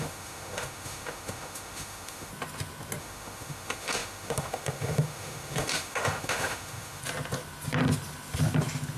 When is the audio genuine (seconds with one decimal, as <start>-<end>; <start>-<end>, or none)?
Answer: 2.3-3.0; 7.0-9.0